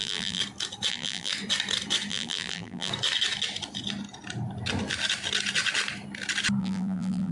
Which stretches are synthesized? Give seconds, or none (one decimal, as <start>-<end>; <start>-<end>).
0.0-0.4; 0.9-1.3; 2.1-2.9; 6.6-7.3

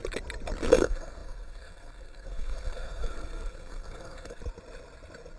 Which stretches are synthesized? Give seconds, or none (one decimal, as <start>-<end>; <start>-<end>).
0.7-4.4

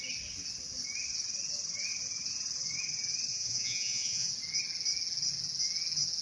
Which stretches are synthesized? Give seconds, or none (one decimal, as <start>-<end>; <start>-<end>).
3.3-4.3

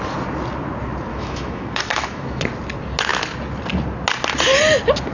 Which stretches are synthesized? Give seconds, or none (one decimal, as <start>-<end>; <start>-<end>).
1.1-2.4

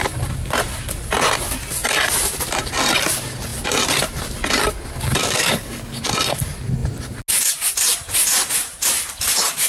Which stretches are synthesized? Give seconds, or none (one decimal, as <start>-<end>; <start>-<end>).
5.2-6.0

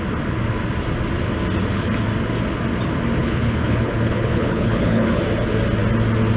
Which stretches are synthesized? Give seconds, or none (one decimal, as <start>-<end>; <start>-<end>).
3.2-5.2